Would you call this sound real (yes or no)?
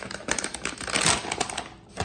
yes